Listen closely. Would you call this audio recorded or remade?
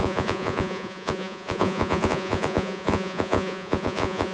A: remade